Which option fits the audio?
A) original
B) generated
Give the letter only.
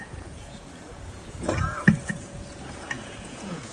B